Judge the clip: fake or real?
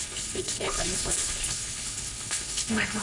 fake